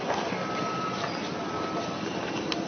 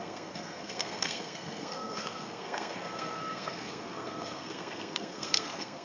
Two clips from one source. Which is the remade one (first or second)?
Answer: second